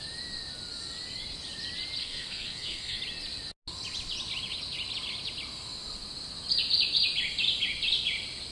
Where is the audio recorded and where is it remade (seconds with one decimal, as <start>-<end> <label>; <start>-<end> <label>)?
0.0-2.0 recorded; 2.0-3.0 remade; 3.0-8.5 recorded